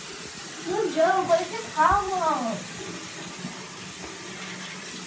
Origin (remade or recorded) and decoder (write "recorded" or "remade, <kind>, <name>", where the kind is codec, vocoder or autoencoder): recorded